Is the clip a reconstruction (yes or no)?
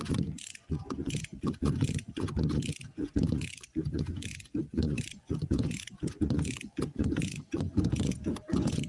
yes